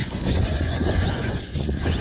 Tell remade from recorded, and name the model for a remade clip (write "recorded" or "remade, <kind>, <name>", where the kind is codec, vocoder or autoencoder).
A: remade, vocoder, Vocos